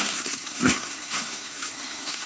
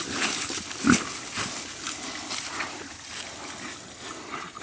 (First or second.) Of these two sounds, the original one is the second